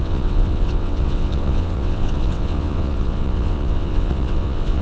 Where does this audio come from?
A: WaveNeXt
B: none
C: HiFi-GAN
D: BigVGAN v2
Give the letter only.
A